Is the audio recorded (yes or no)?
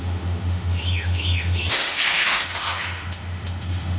no